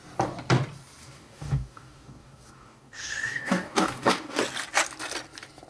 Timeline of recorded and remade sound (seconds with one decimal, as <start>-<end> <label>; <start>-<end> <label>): 0.0-1.0 recorded; 1.0-4.4 remade; 4.4-5.7 recorded